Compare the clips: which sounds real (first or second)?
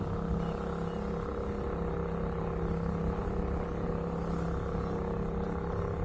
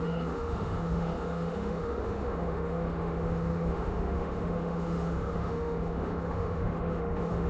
first